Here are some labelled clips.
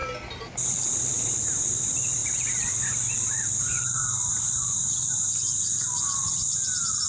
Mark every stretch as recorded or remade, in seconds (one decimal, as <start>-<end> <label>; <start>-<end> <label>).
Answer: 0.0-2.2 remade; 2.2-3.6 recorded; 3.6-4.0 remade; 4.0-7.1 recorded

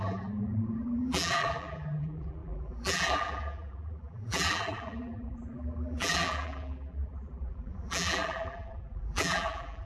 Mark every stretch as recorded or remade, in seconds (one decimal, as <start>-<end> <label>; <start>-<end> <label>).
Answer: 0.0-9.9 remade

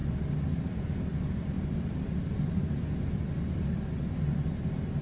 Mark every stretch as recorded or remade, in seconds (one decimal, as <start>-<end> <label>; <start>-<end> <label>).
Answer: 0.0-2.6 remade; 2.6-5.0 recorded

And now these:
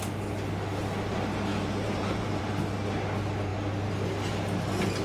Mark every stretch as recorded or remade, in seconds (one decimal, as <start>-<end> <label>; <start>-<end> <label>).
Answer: 0.0-1.5 recorded; 1.5-2.4 remade; 2.4-5.0 recorded

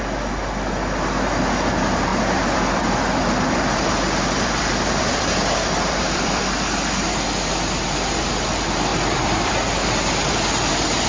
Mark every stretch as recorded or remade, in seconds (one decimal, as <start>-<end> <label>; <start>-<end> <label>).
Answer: 0.0-2.1 recorded; 2.1-6.6 remade; 6.6-8.9 recorded; 8.9-9.5 remade; 9.5-11.1 recorded

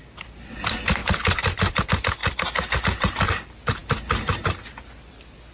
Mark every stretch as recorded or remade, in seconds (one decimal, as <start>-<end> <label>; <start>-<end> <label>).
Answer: 0.0-1.0 recorded; 1.0-1.8 remade; 1.8-2.2 recorded; 2.2-2.8 remade; 2.8-5.5 recorded